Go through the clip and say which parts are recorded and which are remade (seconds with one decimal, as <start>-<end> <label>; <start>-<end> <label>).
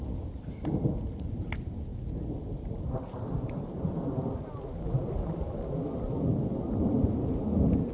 0.0-7.9 recorded